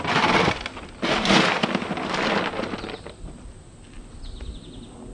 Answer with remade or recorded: recorded